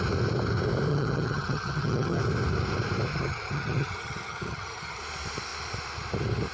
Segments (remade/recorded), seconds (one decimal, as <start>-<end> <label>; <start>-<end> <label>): 0.0-0.9 recorded; 0.9-2.2 remade; 2.2-3.1 recorded; 3.1-5.0 remade; 5.0-6.5 recorded